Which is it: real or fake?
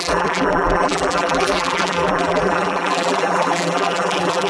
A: fake